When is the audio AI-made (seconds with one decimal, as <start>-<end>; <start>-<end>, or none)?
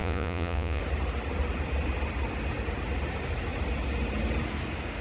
0.0-0.8